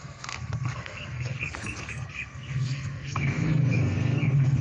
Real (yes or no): no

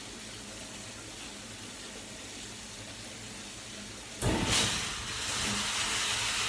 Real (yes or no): yes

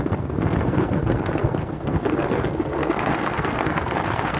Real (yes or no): no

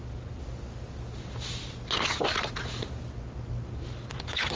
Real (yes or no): yes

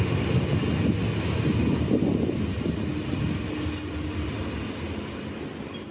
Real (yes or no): yes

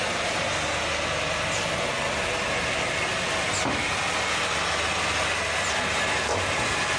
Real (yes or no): yes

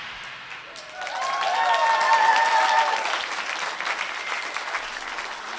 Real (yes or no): yes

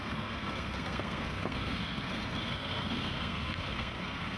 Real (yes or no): no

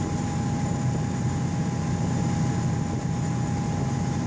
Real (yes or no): yes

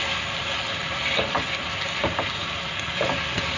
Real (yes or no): yes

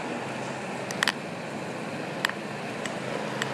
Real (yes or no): yes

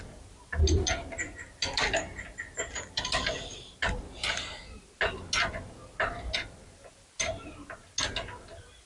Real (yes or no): yes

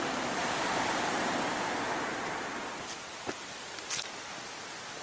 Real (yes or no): yes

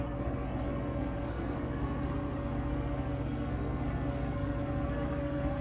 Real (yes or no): no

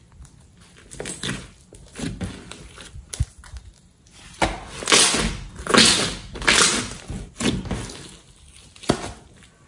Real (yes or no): yes